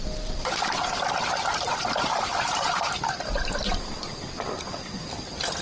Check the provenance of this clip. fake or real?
fake